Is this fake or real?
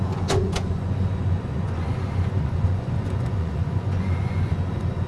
fake